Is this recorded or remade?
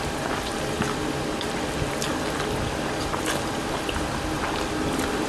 recorded